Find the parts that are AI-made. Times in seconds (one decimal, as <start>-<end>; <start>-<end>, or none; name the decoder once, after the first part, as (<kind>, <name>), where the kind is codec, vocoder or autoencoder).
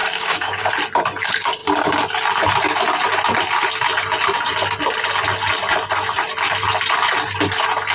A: 0.0-0.7 (codec, DAC)